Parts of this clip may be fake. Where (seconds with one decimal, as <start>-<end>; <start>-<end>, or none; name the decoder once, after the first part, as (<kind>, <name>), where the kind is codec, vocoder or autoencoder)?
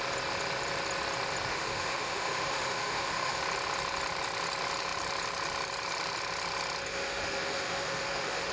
1.5-3.4 (autoencoder, DAC-VAE); 6.9-8.5